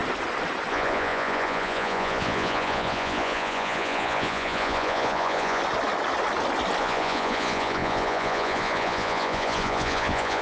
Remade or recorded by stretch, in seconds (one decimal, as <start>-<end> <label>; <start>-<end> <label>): 0.0-0.7 recorded; 0.7-5.6 remade; 5.6-6.8 recorded; 6.8-10.4 remade